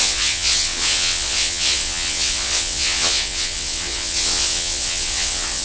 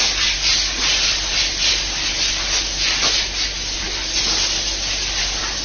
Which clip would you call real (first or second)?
second